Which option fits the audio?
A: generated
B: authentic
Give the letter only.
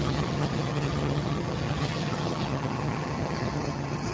A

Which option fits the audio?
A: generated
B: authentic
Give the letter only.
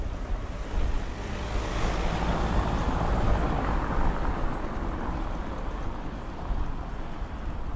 B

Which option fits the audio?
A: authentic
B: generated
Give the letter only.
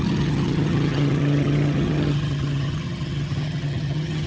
B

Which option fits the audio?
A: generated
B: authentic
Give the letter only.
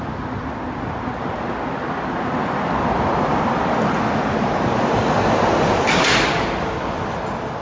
B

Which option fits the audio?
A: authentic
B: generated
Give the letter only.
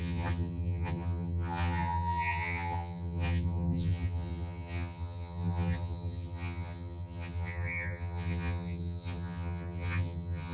B